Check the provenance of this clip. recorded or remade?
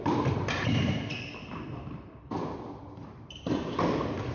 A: recorded